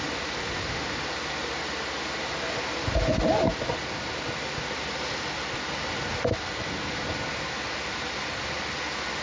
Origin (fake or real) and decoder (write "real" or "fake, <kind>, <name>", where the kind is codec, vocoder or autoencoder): real